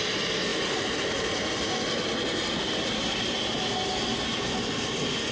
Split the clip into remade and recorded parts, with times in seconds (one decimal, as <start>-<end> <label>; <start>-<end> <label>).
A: 0.0-5.3 recorded